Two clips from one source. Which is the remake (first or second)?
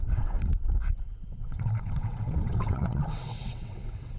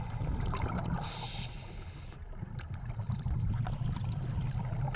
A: first